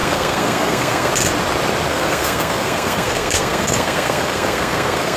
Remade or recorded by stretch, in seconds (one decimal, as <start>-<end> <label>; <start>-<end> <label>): 0.0-1.1 remade; 1.1-1.9 recorded; 1.9-5.2 remade